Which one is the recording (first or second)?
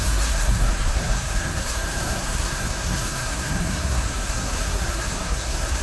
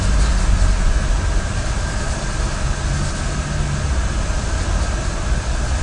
second